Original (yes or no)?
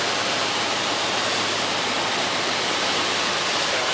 no